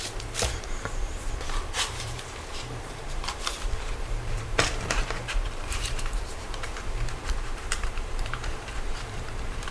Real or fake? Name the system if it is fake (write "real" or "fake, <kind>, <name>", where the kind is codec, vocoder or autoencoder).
fake, vocoder, BigVGAN v2